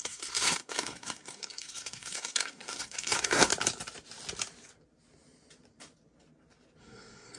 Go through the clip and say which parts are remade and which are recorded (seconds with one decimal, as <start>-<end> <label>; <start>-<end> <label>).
0.0-3.5 remade; 3.5-6.8 recorded; 6.8-7.4 remade